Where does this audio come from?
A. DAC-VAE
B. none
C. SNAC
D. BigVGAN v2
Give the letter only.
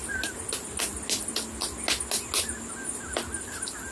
B